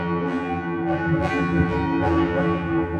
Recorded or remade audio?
remade